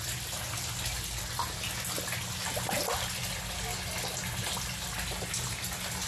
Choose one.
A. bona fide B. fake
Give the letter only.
A